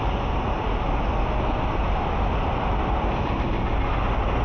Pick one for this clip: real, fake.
real